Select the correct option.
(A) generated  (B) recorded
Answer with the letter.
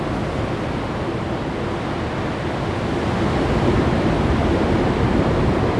B